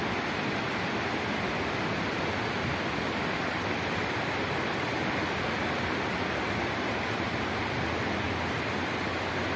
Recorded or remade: remade